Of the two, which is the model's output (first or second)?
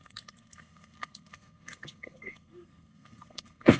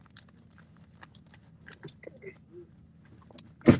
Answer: first